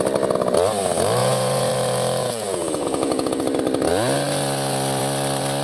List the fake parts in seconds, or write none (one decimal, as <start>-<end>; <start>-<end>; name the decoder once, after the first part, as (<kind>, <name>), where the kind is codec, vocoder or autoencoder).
1.2-1.7 (vocoder, Vocos); 2.2-3.4